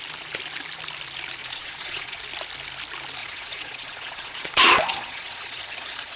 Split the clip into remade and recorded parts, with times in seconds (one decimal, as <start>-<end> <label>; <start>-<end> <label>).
0.0-1.4 recorded; 1.4-2.2 remade; 2.2-3.2 recorded; 3.2-6.2 remade